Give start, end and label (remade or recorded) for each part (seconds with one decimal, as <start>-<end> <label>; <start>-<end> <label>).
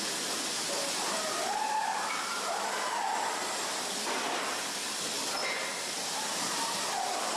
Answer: 0.0-7.4 recorded